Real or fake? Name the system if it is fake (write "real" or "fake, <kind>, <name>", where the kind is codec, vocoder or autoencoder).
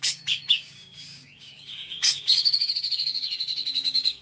fake, codec, DAC